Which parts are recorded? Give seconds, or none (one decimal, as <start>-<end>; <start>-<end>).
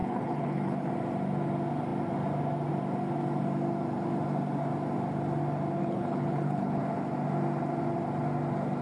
0.9-5.8; 6.8-8.8